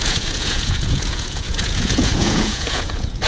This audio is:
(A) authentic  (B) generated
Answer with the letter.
B